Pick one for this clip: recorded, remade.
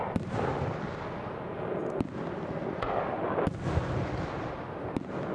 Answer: recorded